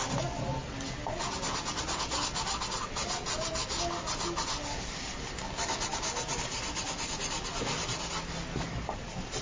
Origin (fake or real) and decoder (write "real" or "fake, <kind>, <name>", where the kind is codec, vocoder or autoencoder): real